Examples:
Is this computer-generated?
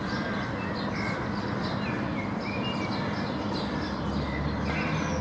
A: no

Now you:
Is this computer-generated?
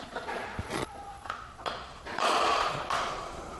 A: yes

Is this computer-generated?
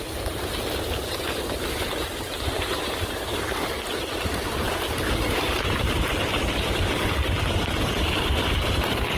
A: yes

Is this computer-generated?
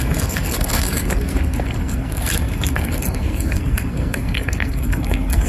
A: yes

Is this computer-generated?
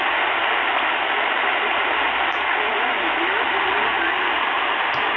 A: no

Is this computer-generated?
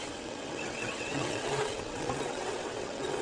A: yes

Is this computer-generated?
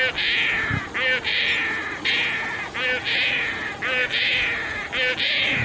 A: no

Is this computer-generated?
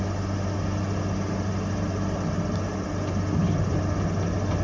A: no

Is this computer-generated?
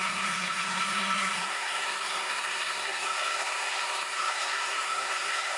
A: yes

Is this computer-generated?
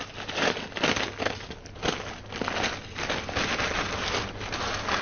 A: no